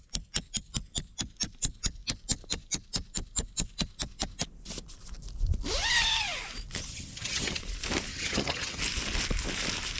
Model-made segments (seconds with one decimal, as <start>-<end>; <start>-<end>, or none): 6.9-7.6; 8.1-8.8